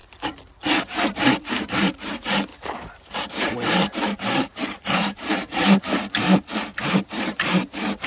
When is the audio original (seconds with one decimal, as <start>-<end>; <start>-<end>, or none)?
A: 0.0-0.8; 6.5-7.0